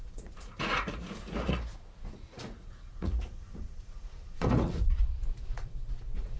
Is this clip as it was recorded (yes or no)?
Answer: no